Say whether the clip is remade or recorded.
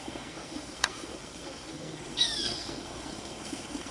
remade